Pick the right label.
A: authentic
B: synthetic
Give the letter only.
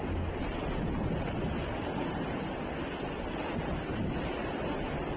A